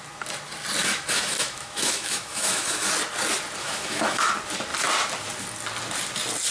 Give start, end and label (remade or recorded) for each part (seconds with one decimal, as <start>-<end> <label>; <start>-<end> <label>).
0.0-0.8 recorded; 0.8-2.9 remade; 2.9-3.6 recorded; 3.6-4.3 remade; 4.3-6.5 recorded